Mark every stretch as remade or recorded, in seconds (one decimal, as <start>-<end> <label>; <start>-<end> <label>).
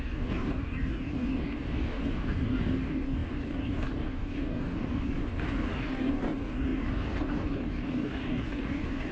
0.0-9.1 remade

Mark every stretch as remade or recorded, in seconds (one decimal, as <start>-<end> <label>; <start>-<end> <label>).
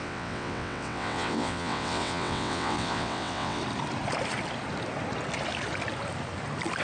0.0-3.6 remade; 3.6-6.8 recorded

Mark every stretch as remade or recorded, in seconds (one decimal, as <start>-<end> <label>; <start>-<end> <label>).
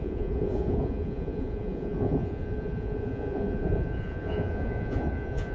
0.0-5.5 remade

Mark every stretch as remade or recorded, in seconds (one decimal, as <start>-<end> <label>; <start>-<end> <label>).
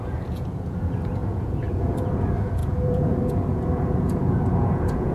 0.0-5.1 remade